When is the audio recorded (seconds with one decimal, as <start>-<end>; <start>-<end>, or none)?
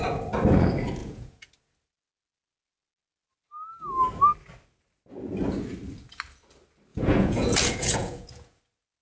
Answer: 0.0-1.0; 1.5-6.9; 8.6-9.0